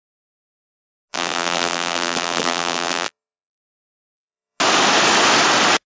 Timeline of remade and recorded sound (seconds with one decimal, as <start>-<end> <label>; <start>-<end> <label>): 0.0-1.1 recorded; 1.1-4.6 remade; 4.6-5.9 recorded